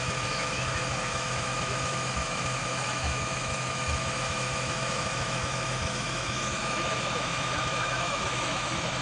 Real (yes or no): no